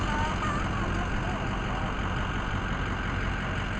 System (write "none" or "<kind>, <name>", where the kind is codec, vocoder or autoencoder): none